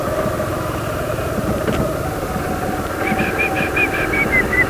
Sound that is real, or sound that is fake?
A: real